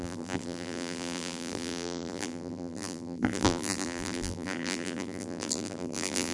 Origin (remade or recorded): remade